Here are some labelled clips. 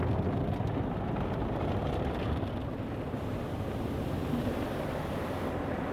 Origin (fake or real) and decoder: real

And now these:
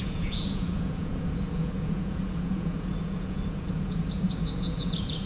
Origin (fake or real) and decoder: fake, vocoder, Vocos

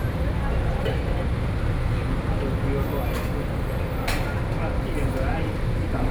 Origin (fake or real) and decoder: real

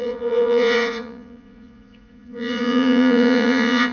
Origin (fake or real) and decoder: fake, vocoder, Vocos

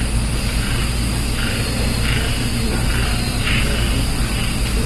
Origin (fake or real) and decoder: real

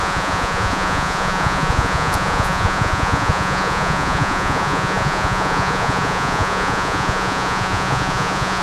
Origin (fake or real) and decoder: fake, vocoder, Vocos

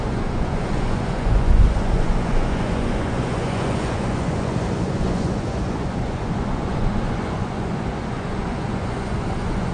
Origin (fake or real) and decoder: fake, vocoder, Vocos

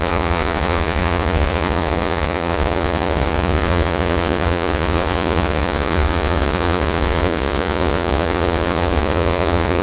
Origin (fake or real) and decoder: fake, vocoder, Vocos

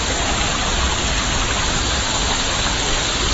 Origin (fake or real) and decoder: real